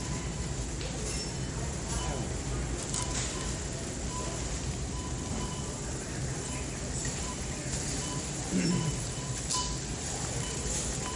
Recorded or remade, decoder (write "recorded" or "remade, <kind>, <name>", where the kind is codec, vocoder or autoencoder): remade, vocoder, BigVGAN v2